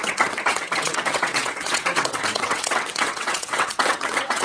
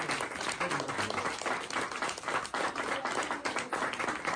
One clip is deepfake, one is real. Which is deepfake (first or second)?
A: first